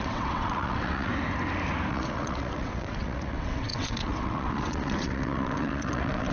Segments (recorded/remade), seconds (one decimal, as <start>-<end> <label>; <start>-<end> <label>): 0.0-1.1 remade; 1.1-1.9 recorded; 1.9-6.3 remade